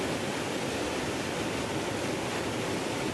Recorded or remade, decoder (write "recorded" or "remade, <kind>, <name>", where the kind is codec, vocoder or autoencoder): remade, vocoder, BigVGAN v2